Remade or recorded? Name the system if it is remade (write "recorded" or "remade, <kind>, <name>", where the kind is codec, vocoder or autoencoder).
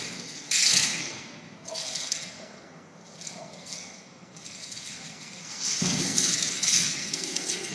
remade, codec, SNAC